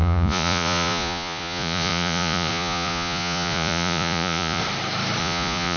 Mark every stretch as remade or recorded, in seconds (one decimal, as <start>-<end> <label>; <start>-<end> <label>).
0.0-4.6 remade; 4.6-5.2 recorded; 5.2-5.8 remade